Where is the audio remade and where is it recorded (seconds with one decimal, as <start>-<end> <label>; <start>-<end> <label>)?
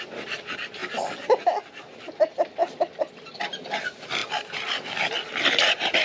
0.0-0.8 remade; 0.8-2.2 recorded; 2.2-2.6 remade; 2.6-3.3 recorded; 3.3-4.2 remade; 4.2-5.5 recorded; 5.5-6.0 remade